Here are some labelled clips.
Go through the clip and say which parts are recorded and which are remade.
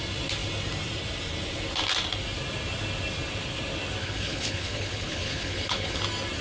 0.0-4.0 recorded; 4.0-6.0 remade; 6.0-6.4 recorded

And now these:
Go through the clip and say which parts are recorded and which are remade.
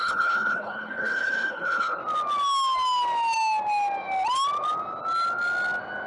0.0-2.0 remade; 2.0-6.1 recorded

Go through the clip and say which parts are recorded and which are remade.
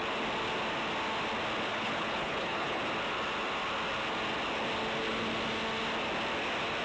0.0-1.7 recorded; 1.7-2.8 remade; 2.8-6.8 recorded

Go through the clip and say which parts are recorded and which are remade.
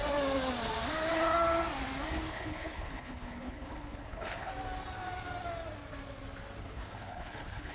0.0-2.1 recorded; 2.1-4.5 remade; 4.5-6.6 recorded; 6.6-7.7 remade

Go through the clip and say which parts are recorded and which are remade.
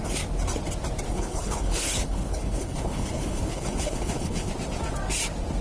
0.0-1.1 recorded; 1.1-4.5 remade; 4.5-5.6 recorded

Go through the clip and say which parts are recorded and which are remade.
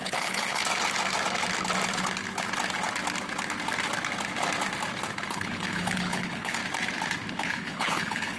0.0-0.6 remade; 0.6-5.3 recorded; 5.3-6.6 remade; 6.6-7.3 recorded; 7.3-8.4 remade